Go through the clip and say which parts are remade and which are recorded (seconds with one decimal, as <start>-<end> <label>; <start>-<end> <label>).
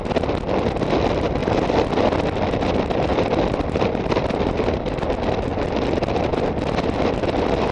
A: 0.0-1.4 recorded; 1.4-2.0 remade; 2.0-3.1 recorded; 3.1-5.1 remade; 5.1-5.5 recorded; 5.5-6.3 remade; 6.3-7.7 recorded